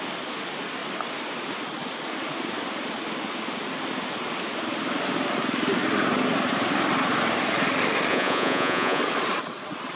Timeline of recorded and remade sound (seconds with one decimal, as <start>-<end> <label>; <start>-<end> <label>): 0.0-8.1 recorded; 8.1-9.0 remade; 9.0-10.0 recorded